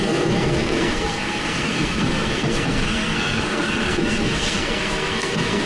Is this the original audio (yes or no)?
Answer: no